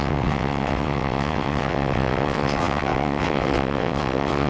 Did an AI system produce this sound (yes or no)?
yes